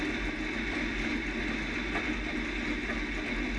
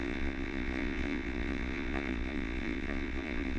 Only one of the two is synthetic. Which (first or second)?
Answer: second